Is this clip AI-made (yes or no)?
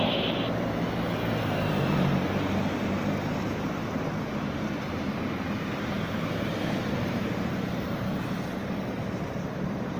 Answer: yes